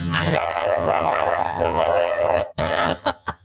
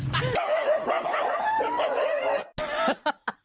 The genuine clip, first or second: second